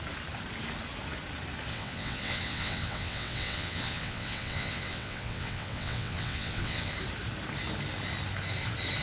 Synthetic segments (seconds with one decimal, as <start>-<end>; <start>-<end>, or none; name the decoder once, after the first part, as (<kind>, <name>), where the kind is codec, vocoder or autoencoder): 1.7-6.9 (vocoder, WaveNeXt)